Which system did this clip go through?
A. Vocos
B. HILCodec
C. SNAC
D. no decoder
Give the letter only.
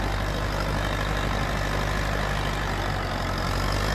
D